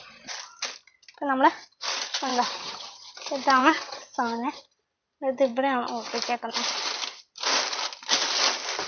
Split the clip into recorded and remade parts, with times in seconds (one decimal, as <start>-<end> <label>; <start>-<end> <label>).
0.0-2.3 recorded; 2.3-3.1 remade; 3.1-3.6 recorded; 3.6-4.5 remade; 4.5-8.9 recorded